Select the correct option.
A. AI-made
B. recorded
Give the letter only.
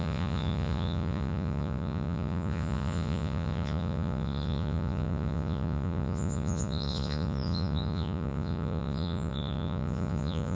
A